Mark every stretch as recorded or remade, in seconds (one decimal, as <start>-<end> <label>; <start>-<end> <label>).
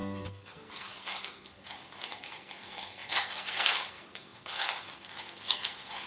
0.0-6.1 remade